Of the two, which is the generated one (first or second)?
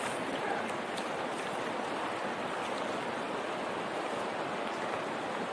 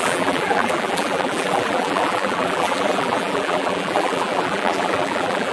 second